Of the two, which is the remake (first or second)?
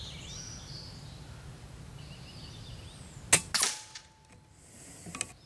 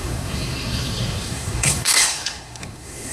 second